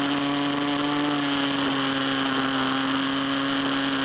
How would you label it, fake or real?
real